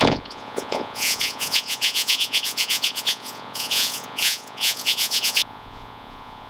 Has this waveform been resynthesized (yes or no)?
yes